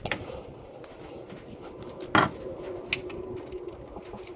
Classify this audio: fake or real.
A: real